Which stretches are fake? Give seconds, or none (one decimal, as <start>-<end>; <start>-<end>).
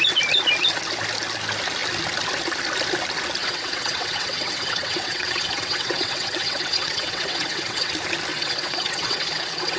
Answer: 3.4-7.9; 8.3-9.8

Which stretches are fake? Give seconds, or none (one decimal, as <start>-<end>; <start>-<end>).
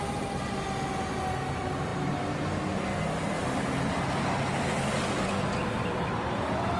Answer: none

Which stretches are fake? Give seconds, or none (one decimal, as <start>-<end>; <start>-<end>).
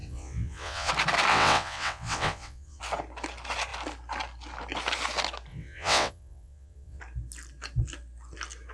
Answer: 0.0-0.9; 1.3-2.8; 5.5-7.0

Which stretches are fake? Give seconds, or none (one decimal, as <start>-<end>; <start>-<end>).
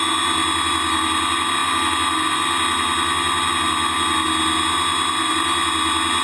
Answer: none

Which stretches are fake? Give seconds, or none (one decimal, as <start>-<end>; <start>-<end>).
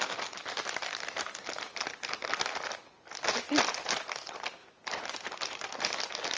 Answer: 4.6-5.7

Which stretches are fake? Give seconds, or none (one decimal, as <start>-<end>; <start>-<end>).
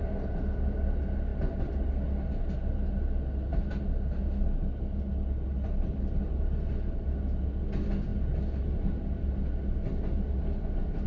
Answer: none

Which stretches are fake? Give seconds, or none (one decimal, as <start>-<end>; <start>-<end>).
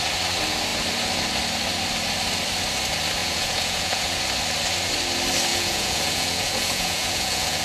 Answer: 3.2-4.2; 5.5-7.6